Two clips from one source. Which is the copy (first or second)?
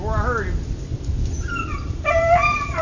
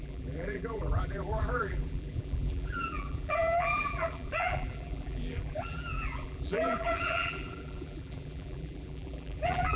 second